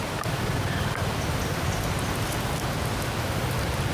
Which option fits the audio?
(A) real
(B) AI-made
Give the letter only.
A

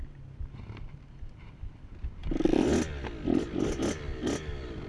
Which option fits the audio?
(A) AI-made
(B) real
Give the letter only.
B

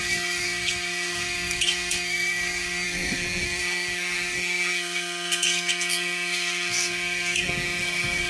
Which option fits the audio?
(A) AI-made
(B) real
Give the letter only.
A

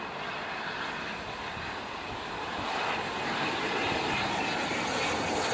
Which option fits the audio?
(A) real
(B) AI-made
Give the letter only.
A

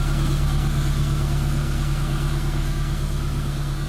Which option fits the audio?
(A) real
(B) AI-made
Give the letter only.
B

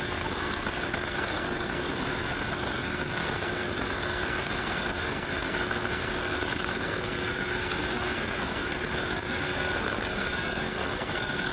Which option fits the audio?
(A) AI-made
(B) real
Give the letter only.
A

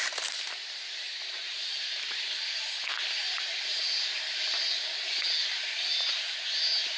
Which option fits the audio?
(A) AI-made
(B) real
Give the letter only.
B